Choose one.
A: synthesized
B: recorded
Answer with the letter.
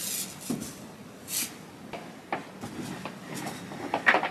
B